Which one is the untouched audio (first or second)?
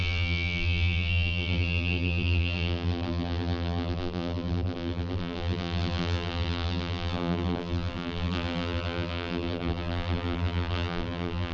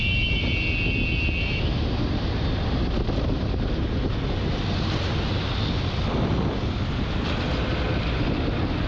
second